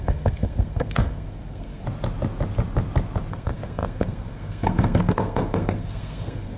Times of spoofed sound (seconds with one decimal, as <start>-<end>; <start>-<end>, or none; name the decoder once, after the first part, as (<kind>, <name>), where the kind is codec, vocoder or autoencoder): 0.0-1.8 (codec, SNAC); 3.3-6.6